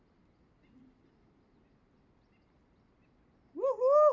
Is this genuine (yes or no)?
yes